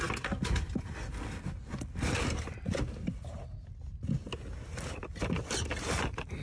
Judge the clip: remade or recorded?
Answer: recorded